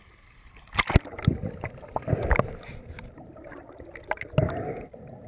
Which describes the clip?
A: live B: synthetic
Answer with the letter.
A